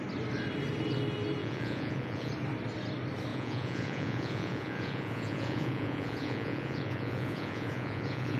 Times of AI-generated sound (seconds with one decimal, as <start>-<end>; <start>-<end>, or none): 1.4-2.3; 3.3-8.4